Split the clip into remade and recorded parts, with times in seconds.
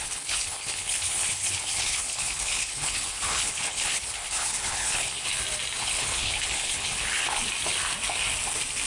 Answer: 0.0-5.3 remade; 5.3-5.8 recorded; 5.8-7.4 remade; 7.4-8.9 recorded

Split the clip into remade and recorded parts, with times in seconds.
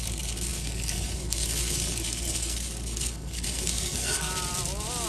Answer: 0.0-4.3 remade; 4.3-5.1 recorded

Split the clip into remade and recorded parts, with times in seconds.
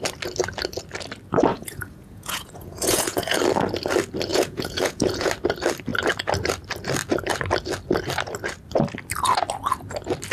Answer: 0.0-1.5 recorded; 1.5-3.4 remade; 3.4-4.3 recorded; 4.3-5.3 remade; 5.3-10.3 recorded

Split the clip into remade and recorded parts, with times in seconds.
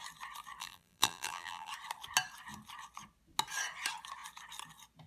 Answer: 0.0-0.6 recorded; 0.6-1.7 remade; 1.7-5.1 recorded